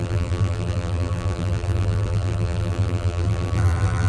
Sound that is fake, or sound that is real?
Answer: fake